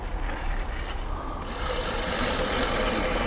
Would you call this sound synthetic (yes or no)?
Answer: no